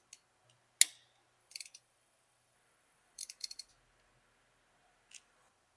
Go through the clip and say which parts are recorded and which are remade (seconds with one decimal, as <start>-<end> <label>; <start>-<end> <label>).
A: 0.0-1.4 recorded; 1.4-3.7 remade; 3.7-5.8 recorded